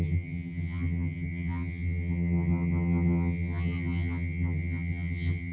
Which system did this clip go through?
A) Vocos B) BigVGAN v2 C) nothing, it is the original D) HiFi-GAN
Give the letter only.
D